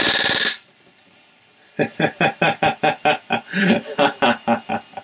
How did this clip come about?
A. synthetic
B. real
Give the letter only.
A